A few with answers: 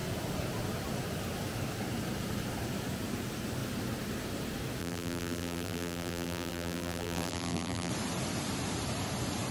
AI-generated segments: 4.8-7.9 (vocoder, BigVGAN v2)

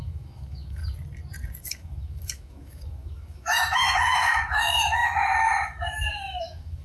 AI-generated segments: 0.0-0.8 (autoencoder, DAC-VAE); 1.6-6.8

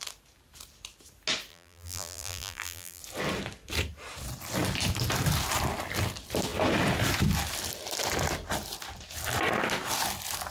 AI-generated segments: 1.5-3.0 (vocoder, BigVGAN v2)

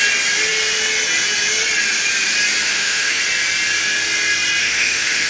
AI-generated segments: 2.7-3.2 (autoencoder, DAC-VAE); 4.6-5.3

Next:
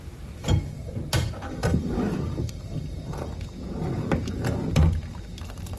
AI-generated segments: 0.4-0.9 (vocoder, BigVGAN v2); 1.6-3.3